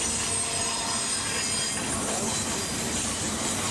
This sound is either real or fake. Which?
real